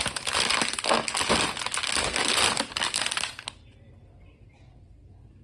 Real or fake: real